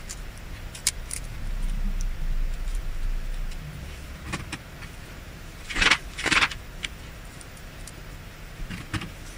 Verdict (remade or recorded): remade